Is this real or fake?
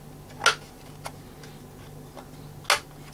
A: real